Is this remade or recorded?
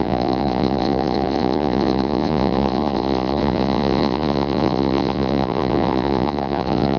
remade